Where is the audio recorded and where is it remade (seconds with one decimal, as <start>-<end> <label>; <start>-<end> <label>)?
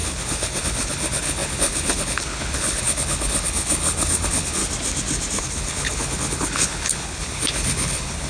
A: 0.0-4.6 remade; 4.6-5.4 recorded; 5.4-8.3 remade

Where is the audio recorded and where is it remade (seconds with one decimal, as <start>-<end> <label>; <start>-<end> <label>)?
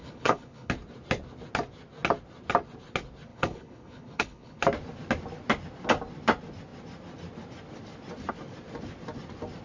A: 0.0-0.7 remade; 0.7-3.3 recorded; 3.3-4.6 remade; 4.6-9.6 recorded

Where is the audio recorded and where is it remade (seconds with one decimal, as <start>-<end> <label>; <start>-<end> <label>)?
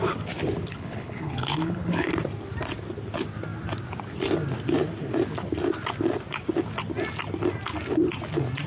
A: 0.0-0.7 recorded; 0.7-2.1 remade; 2.1-8.7 recorded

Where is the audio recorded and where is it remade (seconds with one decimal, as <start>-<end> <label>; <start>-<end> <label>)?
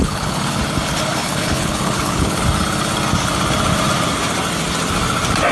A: 0.0-0.6 remade; 0.6-1.2 recorded; 1.2-2.4 remade; 2.4-5.5 recorded